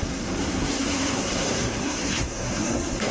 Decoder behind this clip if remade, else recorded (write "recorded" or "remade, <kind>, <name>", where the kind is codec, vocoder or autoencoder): remade, codec, SNAC